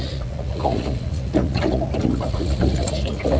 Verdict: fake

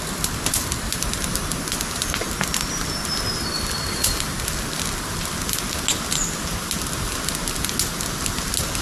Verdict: real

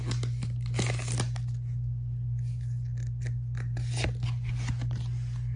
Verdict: real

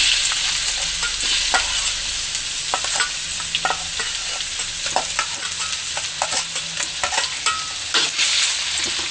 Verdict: real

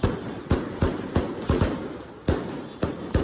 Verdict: real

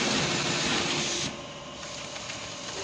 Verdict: real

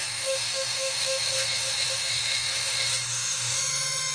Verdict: fake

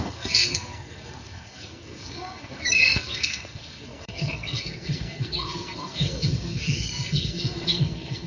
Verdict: fake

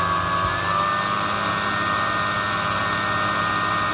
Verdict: real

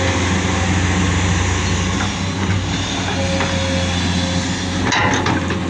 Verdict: real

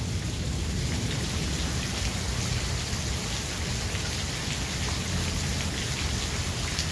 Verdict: real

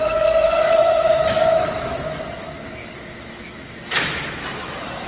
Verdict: fake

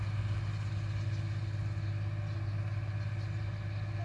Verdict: real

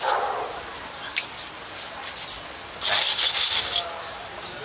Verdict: real